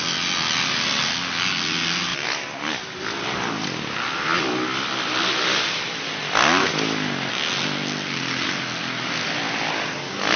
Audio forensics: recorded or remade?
recorded